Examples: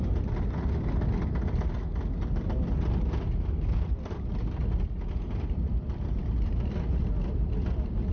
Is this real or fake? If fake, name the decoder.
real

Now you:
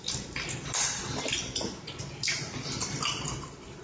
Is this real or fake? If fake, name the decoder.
real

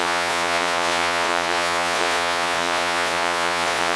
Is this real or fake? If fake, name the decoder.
fake, vocoder, Vocos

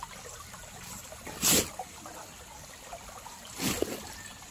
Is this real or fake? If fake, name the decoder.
real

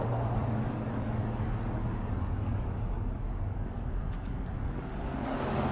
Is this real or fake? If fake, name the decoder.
fake, codec, DAC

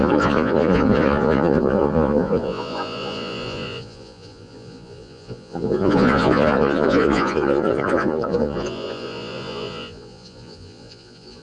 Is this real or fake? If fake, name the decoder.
fake, vocoder, Vocos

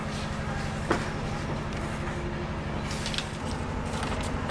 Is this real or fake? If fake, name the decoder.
real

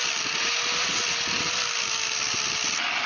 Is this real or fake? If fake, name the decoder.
real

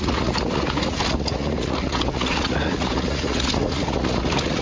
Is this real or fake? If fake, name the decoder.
fake, vocoder, Vocos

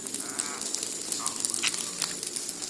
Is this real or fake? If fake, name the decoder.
real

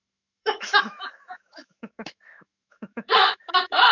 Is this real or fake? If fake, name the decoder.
fake, autoencoder, DAC-VAE